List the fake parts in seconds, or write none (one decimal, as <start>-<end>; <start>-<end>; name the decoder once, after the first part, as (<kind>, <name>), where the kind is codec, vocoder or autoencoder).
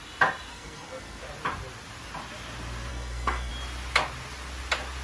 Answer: 0.5-1.2 (codec, SNAC); 2.9-3.5